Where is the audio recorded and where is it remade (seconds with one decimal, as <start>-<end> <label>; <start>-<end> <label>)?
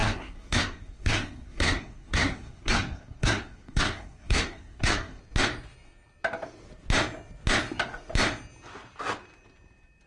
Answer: 0.0-5.2 remade; 5.2-10.1 recorded